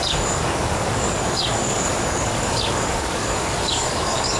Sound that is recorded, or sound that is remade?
remade